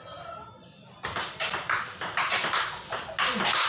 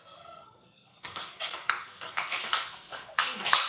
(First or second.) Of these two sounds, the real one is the first